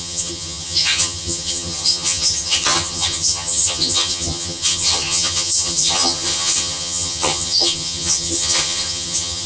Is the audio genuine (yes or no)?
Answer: no